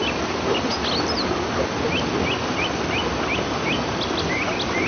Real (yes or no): yes